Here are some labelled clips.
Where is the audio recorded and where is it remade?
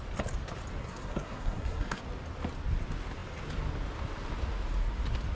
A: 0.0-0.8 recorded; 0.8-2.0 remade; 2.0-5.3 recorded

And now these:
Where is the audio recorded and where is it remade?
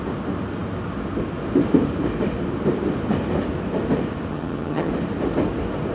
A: 0.0-4.3 recorded; 4.3-4.9 remade; 4.9-5.9 recorded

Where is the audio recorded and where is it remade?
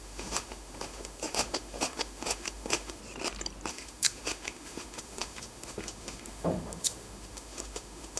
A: 0.0-3.0 remade; 3.0-3.7 recorded; 3.7-8.2 remade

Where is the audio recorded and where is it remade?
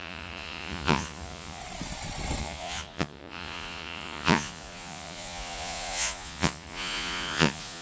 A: 0.0-1.6 remade; 1.6-2.4 recorded; 2.4-7.8 remade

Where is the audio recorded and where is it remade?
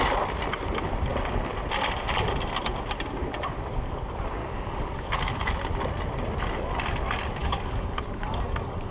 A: 0.0-4.4 recorded; 4.4-5.5 remade; 5.5-7.4 recorded; 7.4-8.9 remade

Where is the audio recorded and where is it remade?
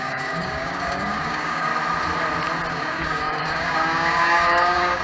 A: 0.0-1.7 remade; 1.7-2.7 recorded; 2.7-5.0 remade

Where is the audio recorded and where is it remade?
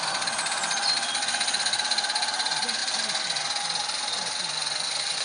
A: 0.0-5.2 recorded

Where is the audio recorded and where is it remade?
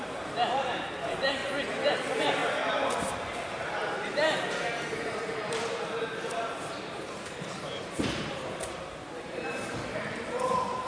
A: 0.0-1.4 remade; 1.4-1.9 recorded; 1.9-2.4 remade; 2.4-2.9 recorded; 2.9-10.9 remade